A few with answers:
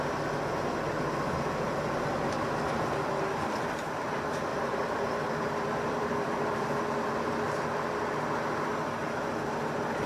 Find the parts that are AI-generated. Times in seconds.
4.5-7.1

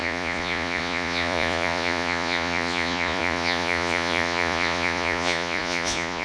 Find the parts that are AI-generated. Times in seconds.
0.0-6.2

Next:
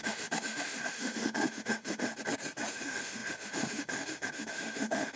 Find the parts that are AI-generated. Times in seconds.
0.0-2.1; 2.7-5.2

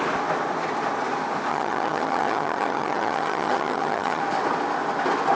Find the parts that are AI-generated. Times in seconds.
1.5-4.2